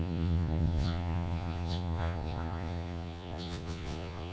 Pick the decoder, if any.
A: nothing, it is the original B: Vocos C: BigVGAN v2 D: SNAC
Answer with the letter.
B